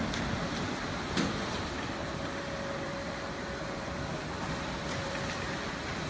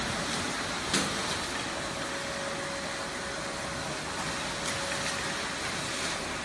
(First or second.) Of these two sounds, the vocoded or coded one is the first